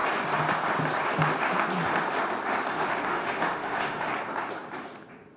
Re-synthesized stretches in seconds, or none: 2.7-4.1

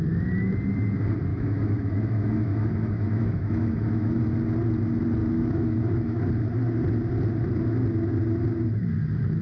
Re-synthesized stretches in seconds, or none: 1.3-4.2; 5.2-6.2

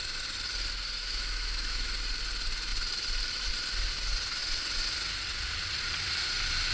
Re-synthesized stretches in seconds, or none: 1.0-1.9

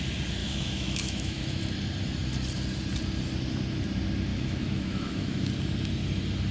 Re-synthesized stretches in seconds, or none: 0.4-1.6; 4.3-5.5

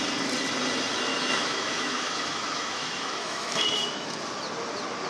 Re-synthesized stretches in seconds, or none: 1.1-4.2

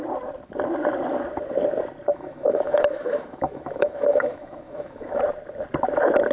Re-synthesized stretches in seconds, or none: 2.1-5.2

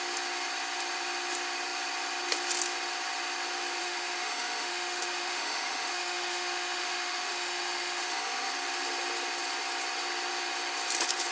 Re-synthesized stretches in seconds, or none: 3.8-8.5

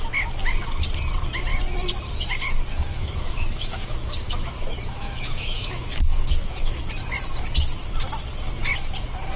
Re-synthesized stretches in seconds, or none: 2.7-6.8